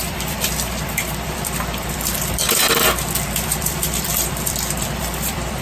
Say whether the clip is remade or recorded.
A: remade